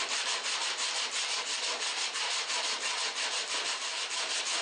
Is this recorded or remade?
recorded